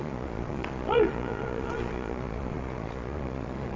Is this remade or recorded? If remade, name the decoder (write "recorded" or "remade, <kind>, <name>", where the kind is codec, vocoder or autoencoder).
remade, vocoder, Vocos